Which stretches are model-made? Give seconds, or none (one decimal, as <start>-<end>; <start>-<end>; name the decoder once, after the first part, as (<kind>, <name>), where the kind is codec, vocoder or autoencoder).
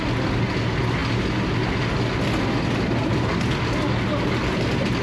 none